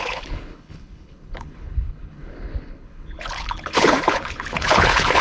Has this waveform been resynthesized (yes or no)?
yes